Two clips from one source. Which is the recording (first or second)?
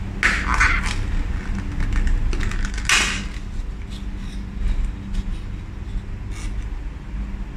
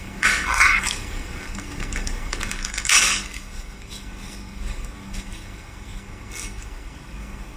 first